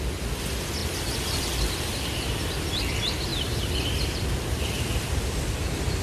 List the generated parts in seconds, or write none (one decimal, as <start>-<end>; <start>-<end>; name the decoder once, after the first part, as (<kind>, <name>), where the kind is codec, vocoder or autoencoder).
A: 0.8-2.7 (vocoder, BigVGAN v2); 3.3-5.1